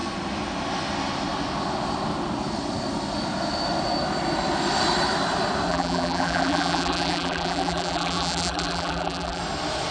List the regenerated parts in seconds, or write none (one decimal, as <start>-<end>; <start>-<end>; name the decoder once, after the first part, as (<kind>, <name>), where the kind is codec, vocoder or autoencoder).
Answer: 5.7-9.4 (vocoder, BigVGAN v2)

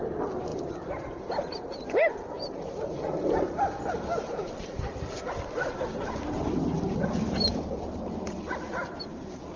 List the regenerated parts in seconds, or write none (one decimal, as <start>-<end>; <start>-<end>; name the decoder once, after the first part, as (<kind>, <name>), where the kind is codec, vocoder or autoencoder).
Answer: 0.5-5.3 (vocoder, BigVGAN v2); 7.5-8.5

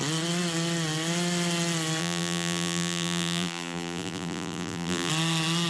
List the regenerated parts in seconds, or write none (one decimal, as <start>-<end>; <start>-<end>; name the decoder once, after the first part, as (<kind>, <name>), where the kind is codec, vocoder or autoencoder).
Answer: 2.0-5.1 (vocoder, BigVGAN v2)

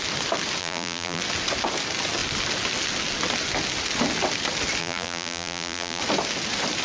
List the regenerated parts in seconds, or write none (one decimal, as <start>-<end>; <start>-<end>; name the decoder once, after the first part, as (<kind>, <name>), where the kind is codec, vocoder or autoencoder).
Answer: 0.6-1.2 (vocoder, BigVGAN v2); 4.8-6.0

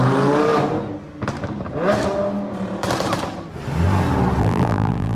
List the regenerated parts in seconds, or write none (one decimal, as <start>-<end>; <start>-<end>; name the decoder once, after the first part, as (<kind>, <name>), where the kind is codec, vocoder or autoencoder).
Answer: 4.4-5.2 (vocoder, BigVGAN v2)

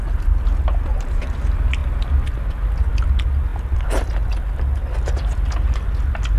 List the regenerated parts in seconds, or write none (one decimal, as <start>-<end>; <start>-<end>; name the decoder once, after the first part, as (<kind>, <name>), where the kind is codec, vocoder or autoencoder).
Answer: none